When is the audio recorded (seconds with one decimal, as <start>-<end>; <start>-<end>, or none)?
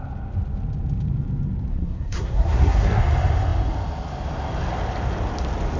0.0-1.7; 3.0-5.8